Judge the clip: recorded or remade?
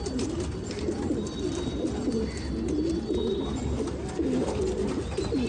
recorded